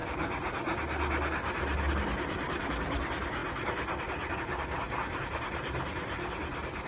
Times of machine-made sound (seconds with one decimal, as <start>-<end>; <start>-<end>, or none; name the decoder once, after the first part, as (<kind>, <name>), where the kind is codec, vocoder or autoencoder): none